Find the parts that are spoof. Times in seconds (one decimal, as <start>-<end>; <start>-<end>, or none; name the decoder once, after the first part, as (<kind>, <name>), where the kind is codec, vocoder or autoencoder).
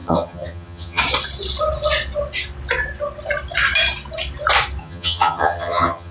0.0-1.0 (vocoder, HiFi-GAN); 4.8-6.1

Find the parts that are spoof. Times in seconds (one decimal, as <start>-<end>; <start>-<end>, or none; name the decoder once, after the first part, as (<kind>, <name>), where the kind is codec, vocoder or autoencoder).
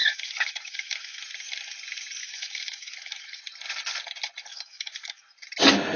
0.0-1.2 (autoencoder, DAC-VAE); 2.2-3.4; 4.5-5.2